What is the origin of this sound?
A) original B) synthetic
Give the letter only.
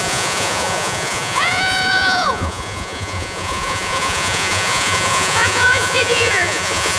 B